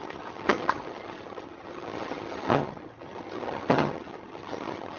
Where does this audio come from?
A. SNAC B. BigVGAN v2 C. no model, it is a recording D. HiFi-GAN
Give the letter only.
D